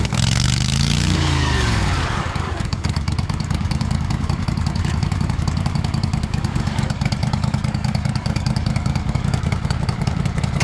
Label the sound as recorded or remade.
remade